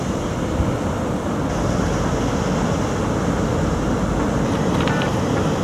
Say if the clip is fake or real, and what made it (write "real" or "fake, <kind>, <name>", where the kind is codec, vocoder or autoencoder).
real